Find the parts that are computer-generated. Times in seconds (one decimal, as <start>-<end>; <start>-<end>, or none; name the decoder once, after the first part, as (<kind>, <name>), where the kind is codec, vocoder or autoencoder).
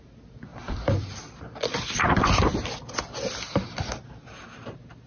0.5-1.2 (vocoder, BigVGAN v2)